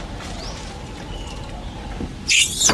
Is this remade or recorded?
recorded